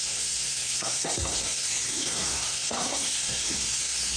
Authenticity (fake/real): fake